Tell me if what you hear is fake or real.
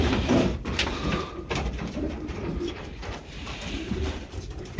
fake